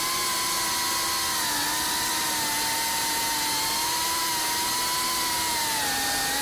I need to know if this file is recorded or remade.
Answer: recorded